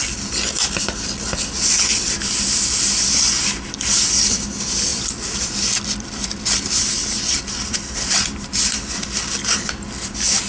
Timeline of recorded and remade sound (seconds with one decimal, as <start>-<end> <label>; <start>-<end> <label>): 0.0-4.9 recorded; 4.9-9.7 remade; 9.7-10.5 recorded